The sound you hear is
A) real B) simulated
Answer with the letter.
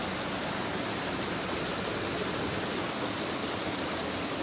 A